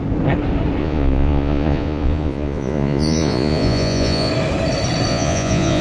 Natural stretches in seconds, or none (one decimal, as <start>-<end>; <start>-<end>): 0.0-0.8; 4.3-5.1